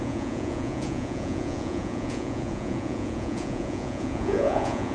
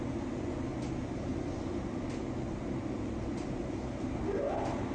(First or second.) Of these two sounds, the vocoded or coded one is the first